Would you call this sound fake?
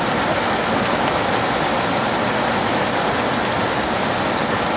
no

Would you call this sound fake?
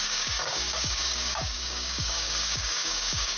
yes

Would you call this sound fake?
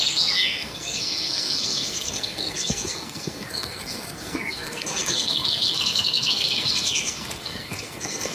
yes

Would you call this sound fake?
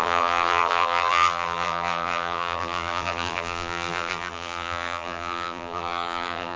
yes